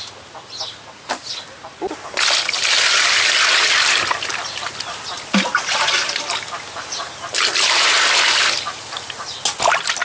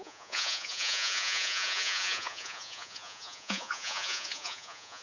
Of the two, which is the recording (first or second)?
first